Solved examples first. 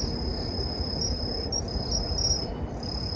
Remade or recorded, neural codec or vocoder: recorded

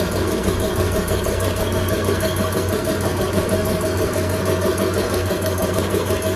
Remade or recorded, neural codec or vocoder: remade, codec, SNAC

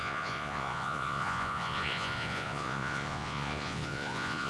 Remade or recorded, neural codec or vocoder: remade, vocoder, Vocos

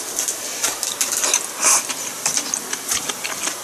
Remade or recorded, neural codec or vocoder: recorded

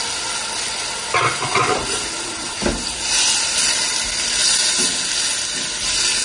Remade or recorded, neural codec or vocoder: recorded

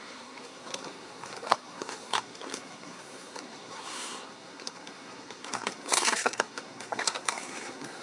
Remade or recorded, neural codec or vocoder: remade, codec, SNAC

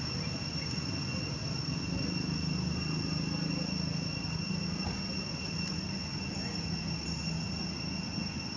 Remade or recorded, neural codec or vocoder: recorded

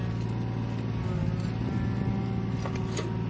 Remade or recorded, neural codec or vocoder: recorded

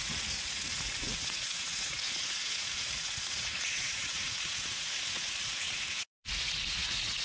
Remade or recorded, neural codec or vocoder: remade, vocoder, Vocos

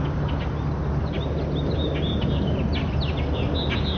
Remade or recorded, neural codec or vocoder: recorded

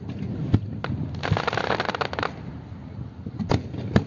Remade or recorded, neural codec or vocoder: recorded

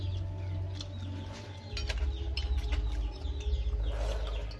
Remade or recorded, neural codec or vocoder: recorded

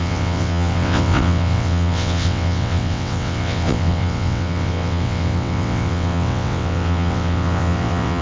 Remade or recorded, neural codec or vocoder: remade, vocoder, WaveNeXt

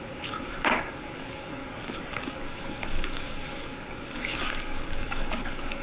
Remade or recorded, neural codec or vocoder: remade, codec, DAC